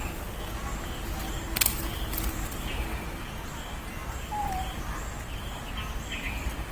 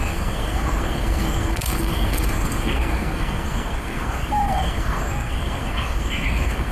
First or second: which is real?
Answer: first